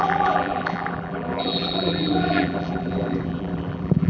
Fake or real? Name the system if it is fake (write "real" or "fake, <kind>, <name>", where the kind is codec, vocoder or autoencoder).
fake, vocoder, BigVGAN v2